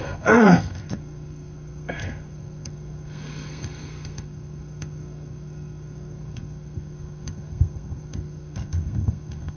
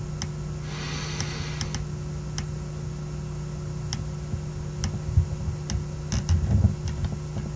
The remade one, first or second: first